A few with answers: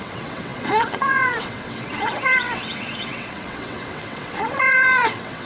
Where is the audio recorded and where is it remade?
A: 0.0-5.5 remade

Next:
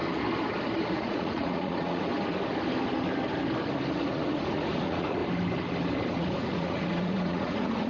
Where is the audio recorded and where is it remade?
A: 0.0-0.9 recorded; 0.9-2.1 remade; 2.1-3.9 recorded; 3.9-5.2 remade; 5.2-6.1 recorded; 6.1-7.9 remade